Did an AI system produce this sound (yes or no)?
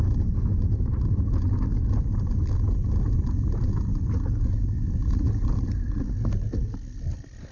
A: no